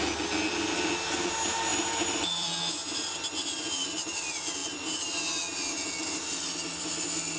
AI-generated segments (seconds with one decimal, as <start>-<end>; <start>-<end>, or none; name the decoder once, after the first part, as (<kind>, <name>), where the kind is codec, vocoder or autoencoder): 1.7-2.5 (vocoder, BigVGAN v2)